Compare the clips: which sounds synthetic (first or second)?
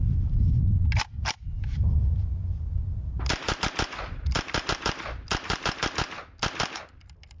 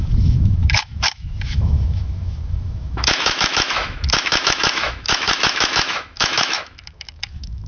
second